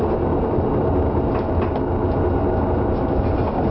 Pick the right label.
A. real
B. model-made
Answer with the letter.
A